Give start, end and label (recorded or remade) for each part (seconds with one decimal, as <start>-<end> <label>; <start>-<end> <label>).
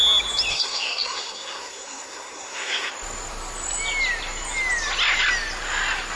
0.0-0.5 recorded; 0.5-2.9 remade; 2.9-6.2 recorded